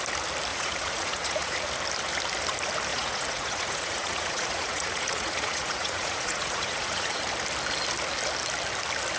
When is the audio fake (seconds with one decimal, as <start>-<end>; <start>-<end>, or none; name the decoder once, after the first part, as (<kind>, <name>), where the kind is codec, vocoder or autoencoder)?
0.5-1.7 (vocoder, Vocos); 2.9-7.2